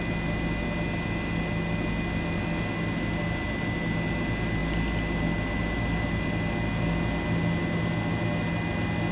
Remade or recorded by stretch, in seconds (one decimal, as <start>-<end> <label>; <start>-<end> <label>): 0.0-9.1 recorded